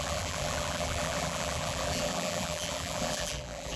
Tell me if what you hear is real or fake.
fake